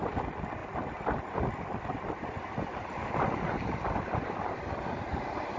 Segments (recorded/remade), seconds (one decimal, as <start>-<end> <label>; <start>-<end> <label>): 0.0-5.6 recorded